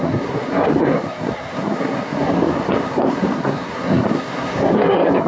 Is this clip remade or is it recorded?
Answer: remade